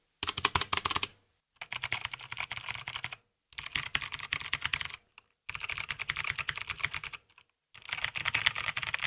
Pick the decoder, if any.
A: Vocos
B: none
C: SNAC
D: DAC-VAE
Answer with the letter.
B